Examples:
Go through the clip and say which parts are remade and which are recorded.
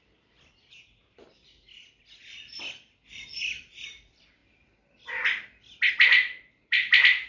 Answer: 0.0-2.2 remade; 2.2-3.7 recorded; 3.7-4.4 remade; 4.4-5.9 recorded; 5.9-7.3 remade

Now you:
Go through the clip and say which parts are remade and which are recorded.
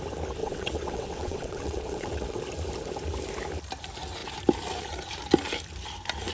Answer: 0.0-0.4 recorded; 0.4-2.4 remade; 2.4-6.3 recorded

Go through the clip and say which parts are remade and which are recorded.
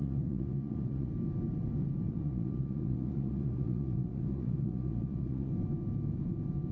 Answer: 0.0-1.1 remade; 1.1-2.1 recorded; 2.1-5.5 remade; 5.5-6.7 recorded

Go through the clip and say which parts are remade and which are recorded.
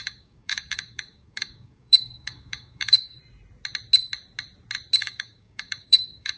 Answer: 0.0-3.2 remade; 3.2-5.0 recorded; 5.0-6.4 remade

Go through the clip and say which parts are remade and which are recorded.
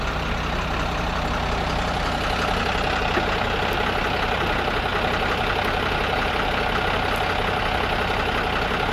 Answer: 0.0-8.9 recorded